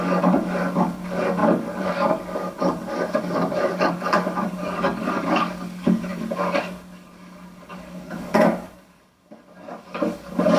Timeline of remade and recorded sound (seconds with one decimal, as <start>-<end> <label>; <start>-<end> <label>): 0.0-10.6 remade